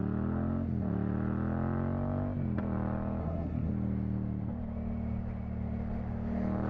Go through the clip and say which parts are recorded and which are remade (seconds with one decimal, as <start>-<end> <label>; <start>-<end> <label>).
0.0-3.2 recorded; 3.2-3.7 remade; 3.7-6.7 recorded